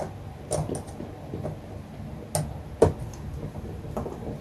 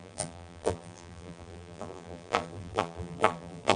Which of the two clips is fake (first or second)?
second